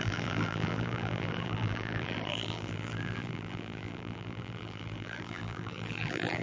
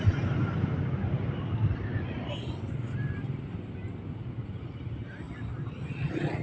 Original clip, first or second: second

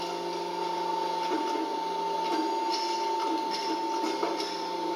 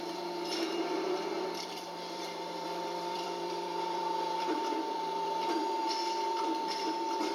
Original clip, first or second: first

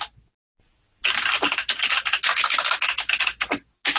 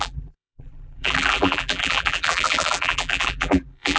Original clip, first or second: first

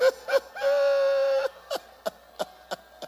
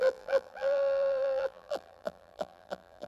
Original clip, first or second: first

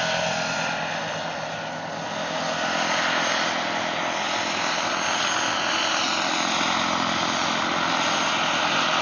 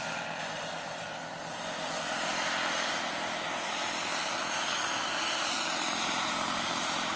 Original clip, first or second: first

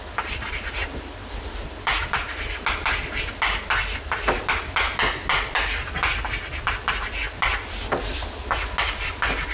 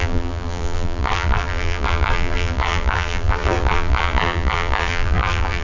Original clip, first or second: first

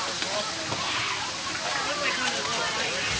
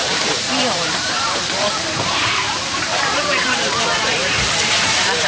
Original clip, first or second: first